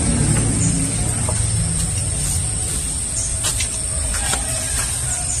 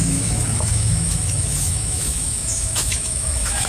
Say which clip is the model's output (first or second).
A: second